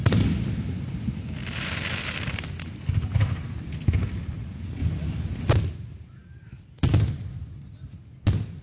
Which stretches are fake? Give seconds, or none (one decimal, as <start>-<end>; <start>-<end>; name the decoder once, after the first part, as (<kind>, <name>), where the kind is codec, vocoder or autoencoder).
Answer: none